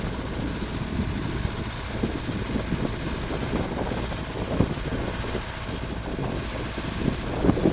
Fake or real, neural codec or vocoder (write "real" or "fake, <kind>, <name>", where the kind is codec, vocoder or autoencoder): real